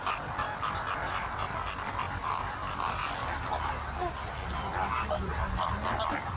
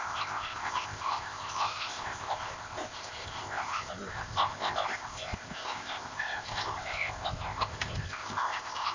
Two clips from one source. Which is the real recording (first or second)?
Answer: first